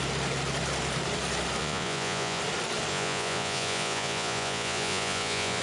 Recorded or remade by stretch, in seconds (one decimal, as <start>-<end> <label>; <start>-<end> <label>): 0.0-1.6 recorded; 1.6-2.4 remade; 2.4-2.9 recorded; 2.9-5.6 remade